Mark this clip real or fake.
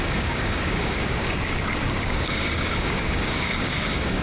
fake